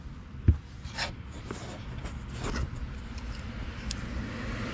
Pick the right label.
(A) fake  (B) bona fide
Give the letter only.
A